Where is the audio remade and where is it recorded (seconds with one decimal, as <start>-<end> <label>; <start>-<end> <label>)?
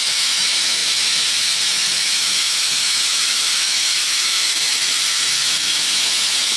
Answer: 0.0-6.6 remade